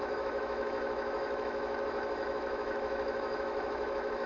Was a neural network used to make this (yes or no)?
yes